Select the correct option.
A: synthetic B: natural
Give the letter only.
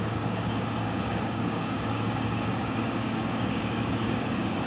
A